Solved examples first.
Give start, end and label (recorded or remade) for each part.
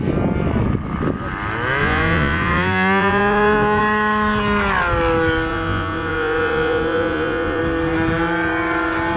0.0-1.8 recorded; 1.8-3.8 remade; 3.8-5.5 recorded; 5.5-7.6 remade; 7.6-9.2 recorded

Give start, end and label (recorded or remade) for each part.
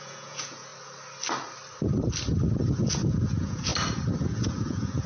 0.0-0.7 remade; 0.7-2.9 recorded; 2.9-3.7 remade; 3.7-4.2 recorded; 4.2-5.1 remade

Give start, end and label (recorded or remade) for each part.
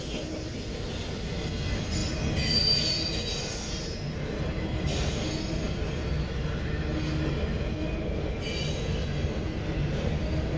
0.0-10.6 recorded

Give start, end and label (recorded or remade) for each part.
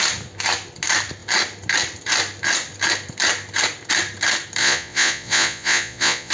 0.0-4.6 recorded; 4.6-6.3 remade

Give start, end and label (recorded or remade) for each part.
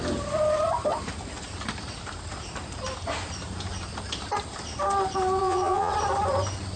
0.0-5.4 recorded; 5.4-5.9 remade; 5.9-6.8 recorded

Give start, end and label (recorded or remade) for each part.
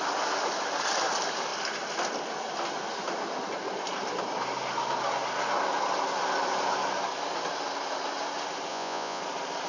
0.0-8.7 recorded; 8.7-9.2 remade; 9.2-9.7 recorded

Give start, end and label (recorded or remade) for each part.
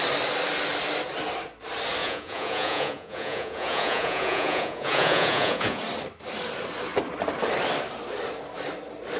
0.0-2.0 recorded; 2.0-5.8 remade; 5.8-9.2 recorded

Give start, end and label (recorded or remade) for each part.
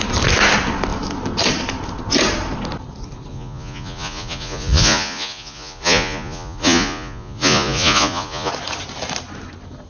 0.0-3.3 recorded; 3.3-8.5 remade; 8.5-9.9 recorded